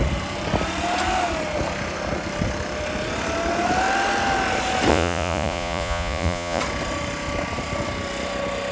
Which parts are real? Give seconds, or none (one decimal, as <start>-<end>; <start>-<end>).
0.0-4.9; 6.6-8.7